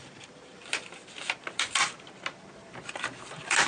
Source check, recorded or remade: remade